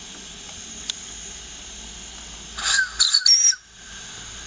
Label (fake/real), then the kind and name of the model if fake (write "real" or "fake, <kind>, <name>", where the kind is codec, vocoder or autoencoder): real